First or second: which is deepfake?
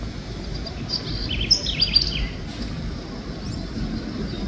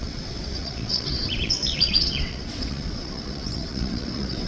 second